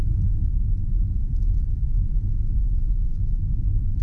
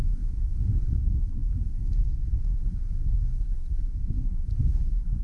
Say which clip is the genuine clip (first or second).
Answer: first